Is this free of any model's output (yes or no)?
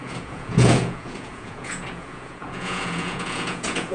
no